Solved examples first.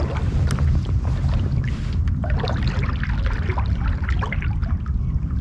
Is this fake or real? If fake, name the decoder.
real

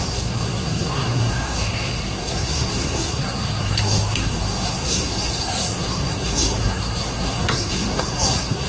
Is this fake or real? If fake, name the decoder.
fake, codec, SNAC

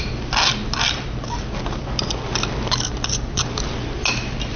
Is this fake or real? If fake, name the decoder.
real